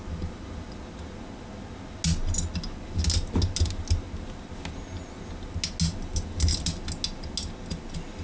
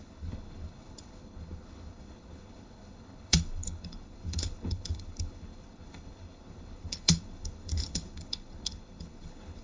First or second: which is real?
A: first